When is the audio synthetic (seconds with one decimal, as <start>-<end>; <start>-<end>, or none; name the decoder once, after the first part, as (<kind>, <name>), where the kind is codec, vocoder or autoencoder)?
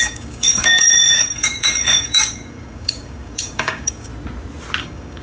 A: 0.0-4.1 (codec, DAC); 4.8-5.2